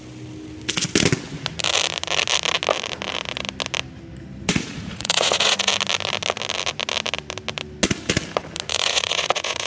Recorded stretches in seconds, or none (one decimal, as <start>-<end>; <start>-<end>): 0.0-4.5; 5.7-8.7